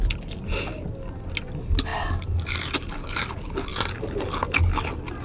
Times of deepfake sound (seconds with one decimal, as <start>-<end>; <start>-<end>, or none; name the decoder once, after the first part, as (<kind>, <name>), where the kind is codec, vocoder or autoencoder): 1.9-2.5 (vocoder, BigVGAN v2)